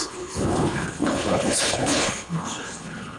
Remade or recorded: remade